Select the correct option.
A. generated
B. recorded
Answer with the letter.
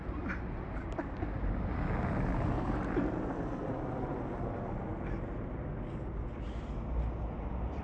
B